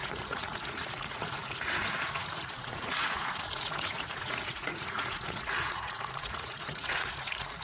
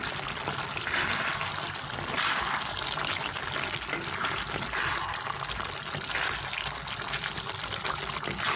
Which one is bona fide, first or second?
second